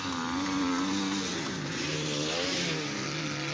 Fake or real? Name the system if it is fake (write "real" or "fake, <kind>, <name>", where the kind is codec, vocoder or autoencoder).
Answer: real